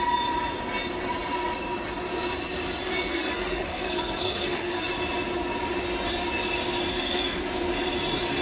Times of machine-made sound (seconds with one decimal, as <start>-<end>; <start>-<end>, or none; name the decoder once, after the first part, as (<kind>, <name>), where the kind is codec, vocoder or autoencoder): 3.1-4.9 (codec, SNAC); 6.9-7.4